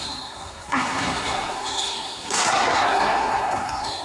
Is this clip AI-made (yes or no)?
yes